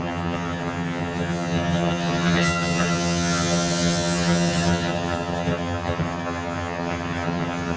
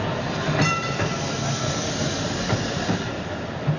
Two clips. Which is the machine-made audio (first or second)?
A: first